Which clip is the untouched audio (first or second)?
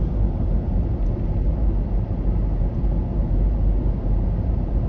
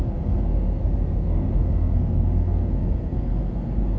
first